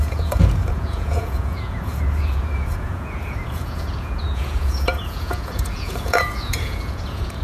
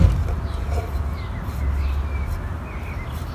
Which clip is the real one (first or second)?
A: second